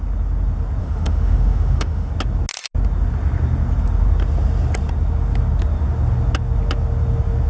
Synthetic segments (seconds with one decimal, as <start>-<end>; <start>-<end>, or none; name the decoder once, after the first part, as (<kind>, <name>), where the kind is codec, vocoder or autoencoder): 0.8-2.1 (autoencoder, DAC-VAE)

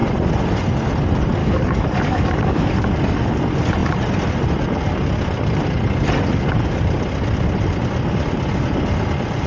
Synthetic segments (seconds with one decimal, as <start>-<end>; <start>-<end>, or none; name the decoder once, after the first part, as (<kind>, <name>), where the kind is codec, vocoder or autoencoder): 1.4-2.7 (codec, DAC)

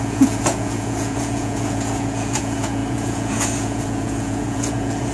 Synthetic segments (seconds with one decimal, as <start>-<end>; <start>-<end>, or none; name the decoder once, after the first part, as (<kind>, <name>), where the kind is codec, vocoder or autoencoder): 0.0-5.1 (vocoder, Vocos)

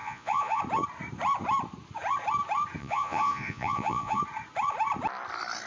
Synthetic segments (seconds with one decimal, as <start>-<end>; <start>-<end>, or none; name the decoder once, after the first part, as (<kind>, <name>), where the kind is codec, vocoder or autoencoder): 0.0-0.6 (vocoder, Vocos); 2.8-4.2

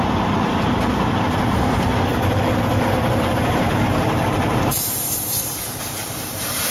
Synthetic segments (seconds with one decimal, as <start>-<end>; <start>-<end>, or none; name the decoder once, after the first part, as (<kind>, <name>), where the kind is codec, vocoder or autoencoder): 2.1-5.5 (vocoder, BigVGAN v2); 6.0-6.7